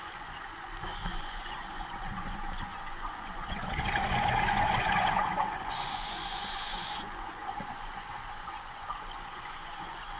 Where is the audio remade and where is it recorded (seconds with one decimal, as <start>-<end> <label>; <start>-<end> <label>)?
0.0-10.2 remade